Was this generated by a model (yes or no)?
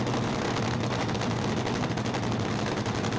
no